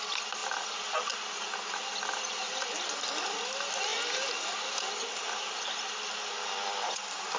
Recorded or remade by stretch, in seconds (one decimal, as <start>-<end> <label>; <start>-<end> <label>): 0.0-7.4 recorded